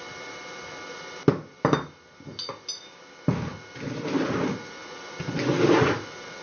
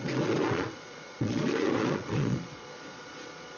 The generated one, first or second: second